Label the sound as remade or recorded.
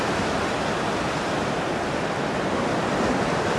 recorded